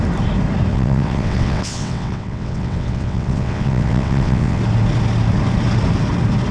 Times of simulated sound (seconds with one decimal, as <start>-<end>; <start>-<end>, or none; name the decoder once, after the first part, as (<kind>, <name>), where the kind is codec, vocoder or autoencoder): 0.7-4.6 (vocoder, WaveNeXt)